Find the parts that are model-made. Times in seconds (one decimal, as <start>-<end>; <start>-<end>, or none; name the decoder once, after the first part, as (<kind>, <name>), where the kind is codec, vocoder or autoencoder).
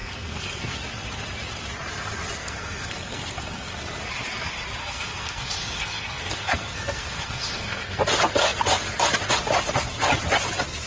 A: 0.0-0.8 (codec, SNAC); 2.4-3.7; 4.8-8.0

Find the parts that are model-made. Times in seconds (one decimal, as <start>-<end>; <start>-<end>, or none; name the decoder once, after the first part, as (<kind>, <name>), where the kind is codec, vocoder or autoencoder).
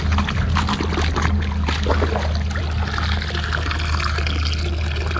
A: none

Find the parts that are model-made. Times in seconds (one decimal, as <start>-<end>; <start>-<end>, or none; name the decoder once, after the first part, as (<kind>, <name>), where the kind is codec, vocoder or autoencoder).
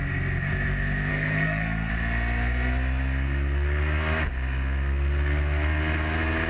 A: 1.1-1.9 (codec, SNAC)